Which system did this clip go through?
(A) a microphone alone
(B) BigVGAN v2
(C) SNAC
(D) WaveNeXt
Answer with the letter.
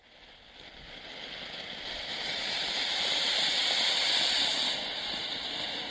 A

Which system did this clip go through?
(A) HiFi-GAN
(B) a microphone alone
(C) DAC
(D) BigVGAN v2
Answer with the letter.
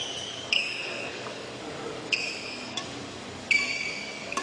C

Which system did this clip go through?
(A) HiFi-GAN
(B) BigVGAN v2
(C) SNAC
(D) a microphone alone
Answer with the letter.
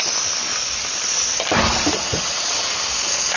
D